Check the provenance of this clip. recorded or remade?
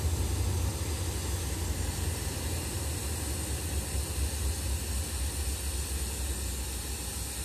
recorded